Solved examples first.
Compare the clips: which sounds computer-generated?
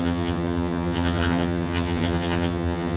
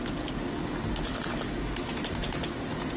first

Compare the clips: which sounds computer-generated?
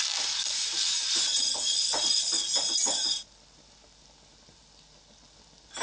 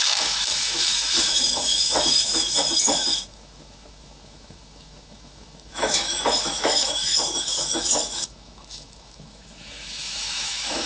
second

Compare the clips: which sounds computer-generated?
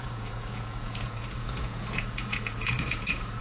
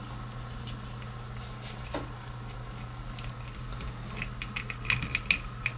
first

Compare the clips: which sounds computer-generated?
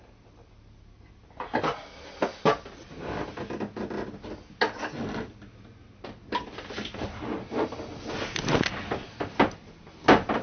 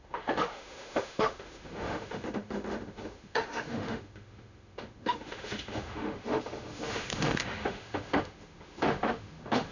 second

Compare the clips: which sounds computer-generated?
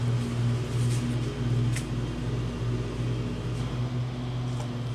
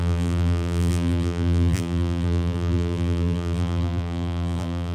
second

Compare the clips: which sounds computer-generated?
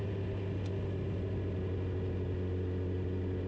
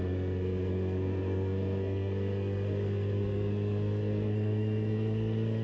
second